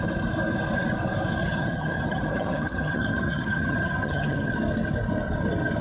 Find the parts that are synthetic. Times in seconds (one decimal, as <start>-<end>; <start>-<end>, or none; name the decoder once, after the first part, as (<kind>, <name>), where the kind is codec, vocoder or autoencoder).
1.4-4.5 (vocoder, HiFi-GAN)